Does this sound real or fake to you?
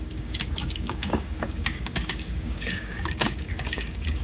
fake